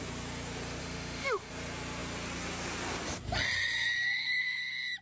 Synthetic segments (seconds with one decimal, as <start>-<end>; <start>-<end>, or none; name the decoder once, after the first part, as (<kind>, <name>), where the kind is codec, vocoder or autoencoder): 0.8-1.5 (autoencoder, DAC-VAE)